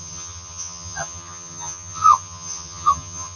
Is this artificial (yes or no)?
yes